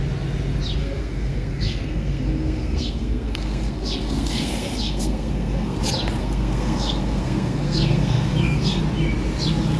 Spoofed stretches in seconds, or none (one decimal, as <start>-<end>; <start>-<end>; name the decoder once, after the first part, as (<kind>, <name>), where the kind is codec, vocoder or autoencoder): 0.8-5.8 (codec, SNAC); 6.2-8.8